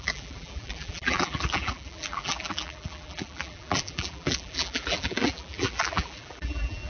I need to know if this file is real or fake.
fake